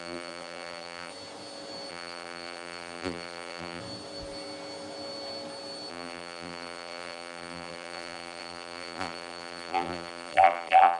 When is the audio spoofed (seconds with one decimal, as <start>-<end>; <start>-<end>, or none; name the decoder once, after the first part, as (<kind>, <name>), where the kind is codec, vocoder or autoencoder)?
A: 0.0-1.1 (vocoder, BigVGAN v2); 1.9-3.8; 5.9-11.0